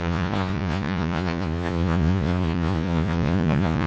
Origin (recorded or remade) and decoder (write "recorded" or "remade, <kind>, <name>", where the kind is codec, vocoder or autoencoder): remade, vocoder, Vocos